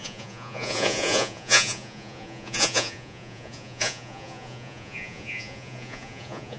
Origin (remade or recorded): remade